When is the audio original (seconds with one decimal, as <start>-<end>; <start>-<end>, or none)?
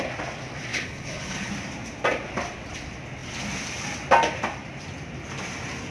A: 0.0-0.7; 1.5-5.9